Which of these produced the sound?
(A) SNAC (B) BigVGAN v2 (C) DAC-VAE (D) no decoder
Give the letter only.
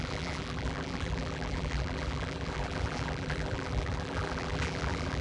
B